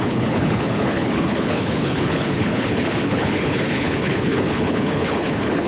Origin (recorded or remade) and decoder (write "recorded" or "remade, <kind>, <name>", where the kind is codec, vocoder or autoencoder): remade, codec, HILCodec